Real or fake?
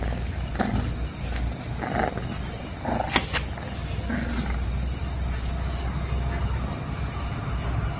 real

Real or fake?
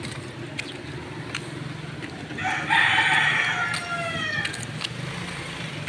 real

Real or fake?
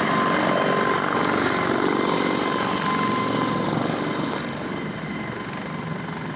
real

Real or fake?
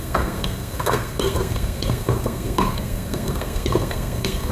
fake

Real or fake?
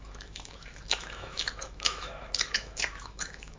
fake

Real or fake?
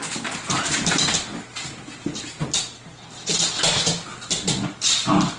real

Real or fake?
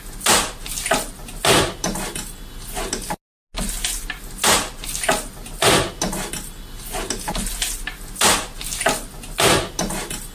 real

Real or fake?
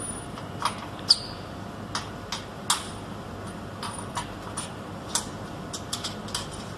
real